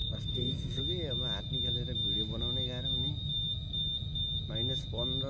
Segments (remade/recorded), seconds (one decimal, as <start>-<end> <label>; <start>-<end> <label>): 0.0-0.8 remade; 0.8-5.3 recorded